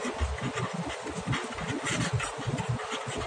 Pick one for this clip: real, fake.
real